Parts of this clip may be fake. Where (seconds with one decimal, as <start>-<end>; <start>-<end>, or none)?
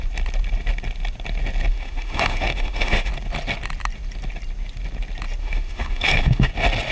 1.7-3.1; 5.4-6.5